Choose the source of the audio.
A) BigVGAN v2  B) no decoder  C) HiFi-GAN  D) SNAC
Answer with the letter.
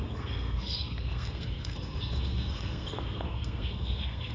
D